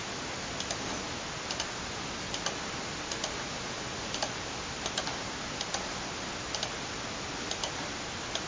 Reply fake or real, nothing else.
real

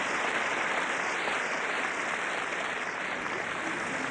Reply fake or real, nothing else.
real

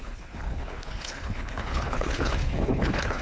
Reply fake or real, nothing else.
fake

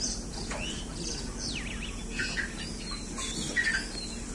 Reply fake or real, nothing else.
real